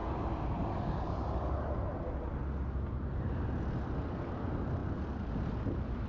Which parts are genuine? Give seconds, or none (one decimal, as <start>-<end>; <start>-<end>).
0.0-6.1